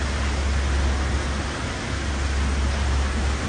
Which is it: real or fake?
real